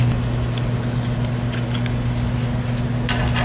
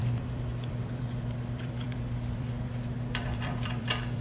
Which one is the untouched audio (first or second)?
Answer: first